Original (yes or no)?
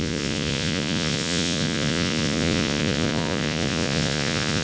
no